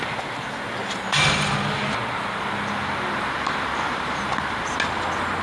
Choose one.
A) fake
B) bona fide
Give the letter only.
B